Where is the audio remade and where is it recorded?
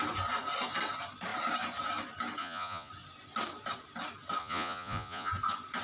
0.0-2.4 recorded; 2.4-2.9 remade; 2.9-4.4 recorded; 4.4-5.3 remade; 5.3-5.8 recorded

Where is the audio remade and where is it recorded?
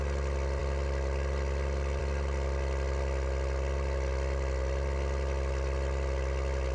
0.0-6.7 recorded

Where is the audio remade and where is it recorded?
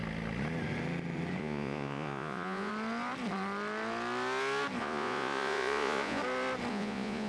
0.0-1.4 recorded; 1.4-2.7 remade; 2.7-4.8 recorded; 4.8-6.2 remade; 6.2-6.7 recorded; 6.7-7.3 remade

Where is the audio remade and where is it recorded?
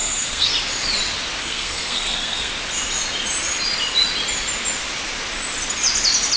0.0-0.5 remade; 0.5-1.4 recorded; 1.4-2.5 remade; 2.5-6.4 recorded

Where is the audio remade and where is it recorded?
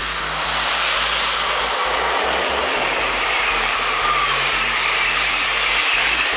0.0-2.6 recorded; 2.6-6.4 remade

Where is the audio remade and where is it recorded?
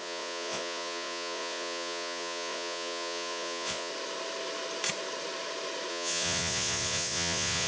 0.0-3.9 remade; 3.9-5.9 recorded; 5.9-7.7 remade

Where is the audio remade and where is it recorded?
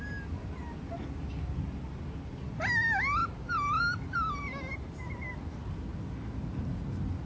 0.0-7.3 recorded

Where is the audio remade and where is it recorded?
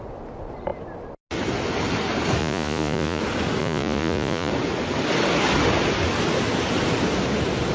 0.0-2.4 recorded; 2.4-3.2 remade; 3.2-3.6 recorded; 3.6-4.5 remade; 4.5-7.7 recorded